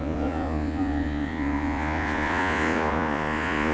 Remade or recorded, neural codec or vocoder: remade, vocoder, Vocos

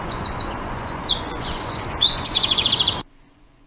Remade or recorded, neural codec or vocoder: remade, vocoder, Vocos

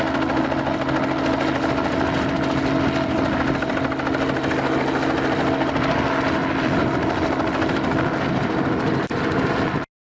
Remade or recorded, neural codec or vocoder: recorded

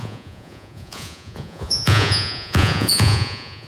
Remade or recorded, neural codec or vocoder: remade, vocoder, Vocos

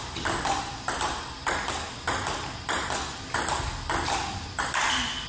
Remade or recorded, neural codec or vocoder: recorded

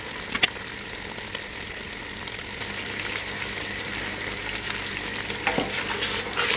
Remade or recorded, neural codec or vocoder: recorded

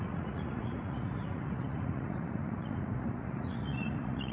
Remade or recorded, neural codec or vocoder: remade, vocoder, Vocos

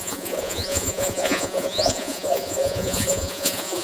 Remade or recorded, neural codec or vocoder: remade, vocoder, Vocos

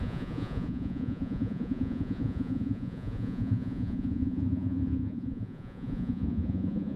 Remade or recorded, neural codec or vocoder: remade, vocoder, Vocos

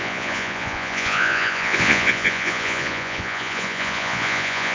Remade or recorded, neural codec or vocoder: remade, vocoder, Vocos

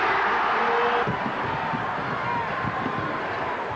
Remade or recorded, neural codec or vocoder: recorded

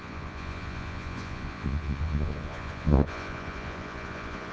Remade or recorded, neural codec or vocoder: remade, vocoder, Vocos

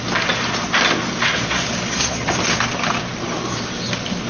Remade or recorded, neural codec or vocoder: recorded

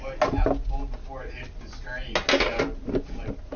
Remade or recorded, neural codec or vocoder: recorded